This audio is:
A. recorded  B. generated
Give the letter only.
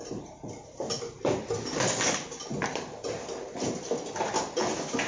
A